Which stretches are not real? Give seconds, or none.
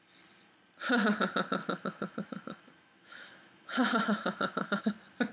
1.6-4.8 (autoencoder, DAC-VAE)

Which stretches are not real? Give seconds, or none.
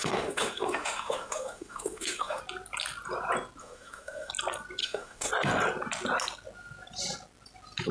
0.0-2.4 (autoencoder, DAC-VAE); 3.6-4.3; 4.8-5.3